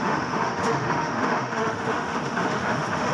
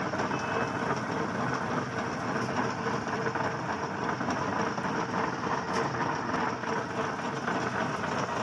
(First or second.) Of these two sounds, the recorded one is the second